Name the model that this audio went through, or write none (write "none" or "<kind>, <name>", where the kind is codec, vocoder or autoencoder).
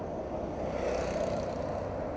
none